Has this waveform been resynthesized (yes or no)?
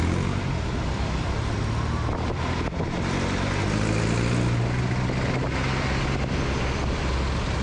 no